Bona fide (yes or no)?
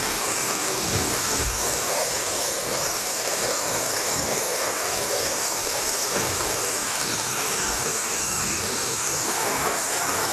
no